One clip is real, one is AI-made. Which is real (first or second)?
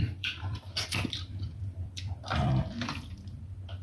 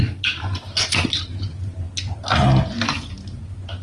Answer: second